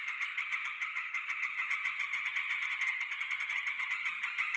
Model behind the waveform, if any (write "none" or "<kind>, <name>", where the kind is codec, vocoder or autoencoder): vocoder, HiFi-GAN